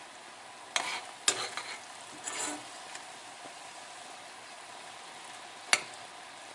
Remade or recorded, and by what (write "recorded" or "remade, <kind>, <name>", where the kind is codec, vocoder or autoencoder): recorded